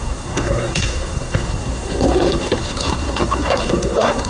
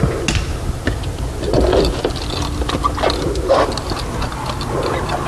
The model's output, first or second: first